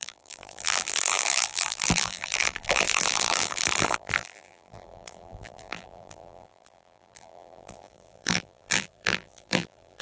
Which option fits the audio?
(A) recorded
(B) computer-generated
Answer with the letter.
B